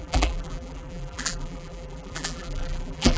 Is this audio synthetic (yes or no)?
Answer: yes